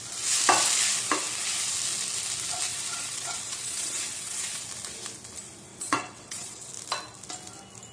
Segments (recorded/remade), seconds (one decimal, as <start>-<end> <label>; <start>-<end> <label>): 0.0-2.7 recorded; 2.7-4.6 remade; 4.6-5.7 recorded; 5.7-6.7 remade; 6.7-7.9 recorded